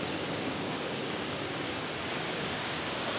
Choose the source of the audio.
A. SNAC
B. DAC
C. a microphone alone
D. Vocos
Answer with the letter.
B